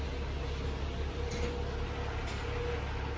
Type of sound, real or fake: real